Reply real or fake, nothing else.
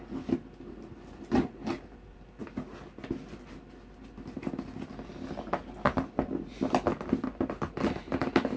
real